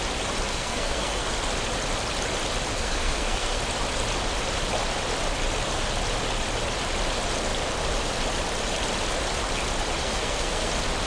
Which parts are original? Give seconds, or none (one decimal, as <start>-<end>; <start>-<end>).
0.0-0.5; 1.3-2.7; 3.6-10.0; 10.7-11.1

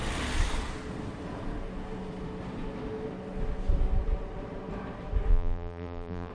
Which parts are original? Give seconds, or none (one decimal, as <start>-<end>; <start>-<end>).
0.0-5.3

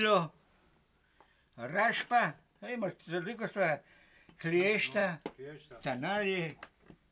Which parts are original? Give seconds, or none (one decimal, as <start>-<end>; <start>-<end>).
0.0-7.1

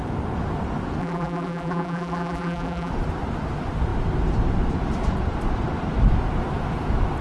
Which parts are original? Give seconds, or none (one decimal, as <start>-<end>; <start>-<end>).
0.0-1.0; 2.9-7.2

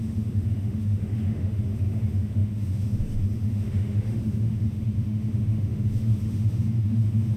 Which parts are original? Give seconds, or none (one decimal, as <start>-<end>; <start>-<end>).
none

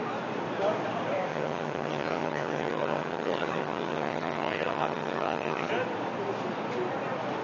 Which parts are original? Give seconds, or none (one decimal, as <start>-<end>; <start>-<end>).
0.0-1.3; 5.7-7.4